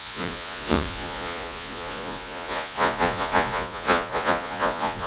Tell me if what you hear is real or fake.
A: fake